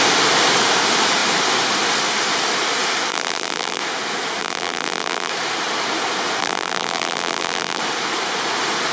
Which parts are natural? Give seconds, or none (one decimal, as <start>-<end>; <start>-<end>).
0.0-3.1; 3.8-4.4; 5.3-6.4; 7.8-8.9